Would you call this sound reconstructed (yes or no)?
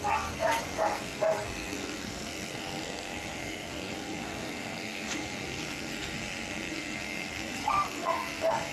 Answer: yes